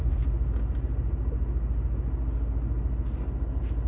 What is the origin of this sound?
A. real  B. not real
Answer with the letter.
A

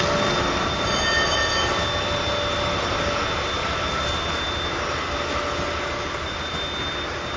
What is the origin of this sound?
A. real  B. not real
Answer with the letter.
A